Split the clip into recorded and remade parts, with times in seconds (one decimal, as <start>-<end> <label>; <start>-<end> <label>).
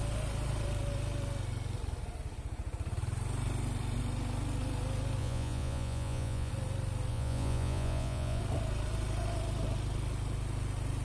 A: 0.0-5.2 recorded; 5.2-6.5 remade; 6.5-7.1 recorded; 7.1-8.4 remade; 8.4-11.0 recorded